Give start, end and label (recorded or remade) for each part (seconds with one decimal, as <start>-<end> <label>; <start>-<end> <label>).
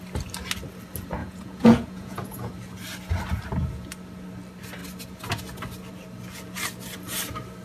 0.0-1.2 recorded; 1.2-2.5 remade; 2.5-7.6 recorded